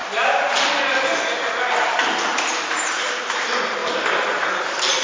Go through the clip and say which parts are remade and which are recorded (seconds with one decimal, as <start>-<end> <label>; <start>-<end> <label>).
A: 0.0-0.8 remade; 0.8-2.3 recorded; 2.3-3.4 remade; 3.4-3.8 recorded; 3.8-4.6 remade; 4.6-5.0 recorded